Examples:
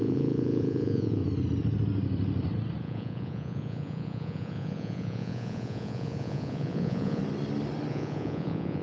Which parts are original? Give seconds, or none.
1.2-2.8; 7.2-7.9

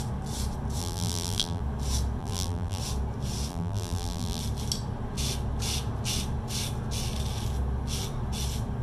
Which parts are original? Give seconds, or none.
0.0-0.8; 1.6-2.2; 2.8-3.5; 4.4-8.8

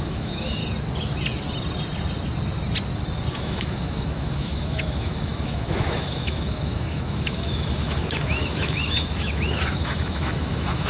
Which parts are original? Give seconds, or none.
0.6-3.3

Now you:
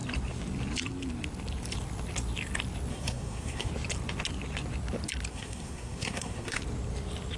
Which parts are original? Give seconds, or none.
0.0-2.9; 3.7-5.3; 6.6-7.4